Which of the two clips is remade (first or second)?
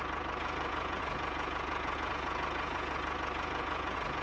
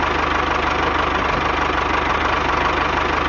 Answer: first